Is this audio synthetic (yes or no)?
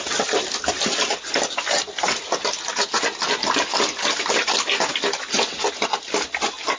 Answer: no